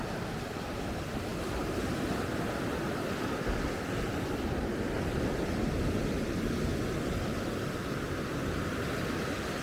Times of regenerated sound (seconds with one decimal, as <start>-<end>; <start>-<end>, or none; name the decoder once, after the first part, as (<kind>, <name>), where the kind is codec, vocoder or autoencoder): 7.8-8.7 (vocoder, BigVGAN v2)